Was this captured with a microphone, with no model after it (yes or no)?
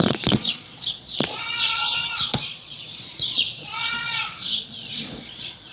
no